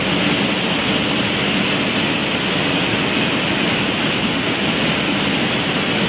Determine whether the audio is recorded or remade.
recorded